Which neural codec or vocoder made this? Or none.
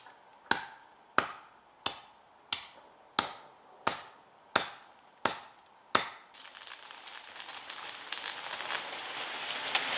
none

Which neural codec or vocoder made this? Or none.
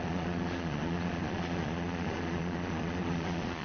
vocoder, Vocos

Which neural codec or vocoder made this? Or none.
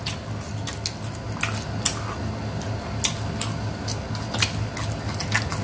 none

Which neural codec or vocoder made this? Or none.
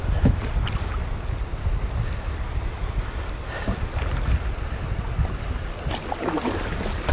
none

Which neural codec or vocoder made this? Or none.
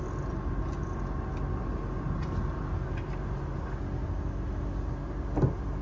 none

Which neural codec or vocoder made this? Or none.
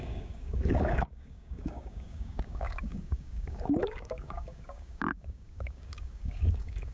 codec, DAC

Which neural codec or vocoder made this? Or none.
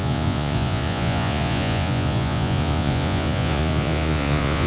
vocoder, Vocos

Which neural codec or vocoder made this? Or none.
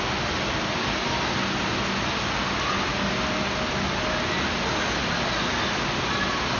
none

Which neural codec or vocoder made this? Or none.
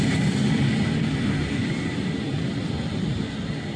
none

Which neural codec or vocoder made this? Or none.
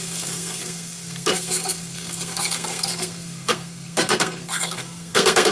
codec, SNAC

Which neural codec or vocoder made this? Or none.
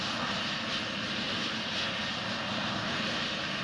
none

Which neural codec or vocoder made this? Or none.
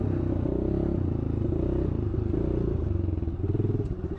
none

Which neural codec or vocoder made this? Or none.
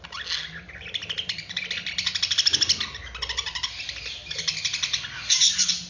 none